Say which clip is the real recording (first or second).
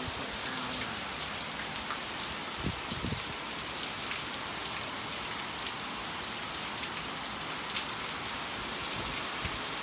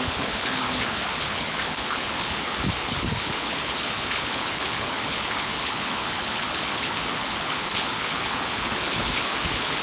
first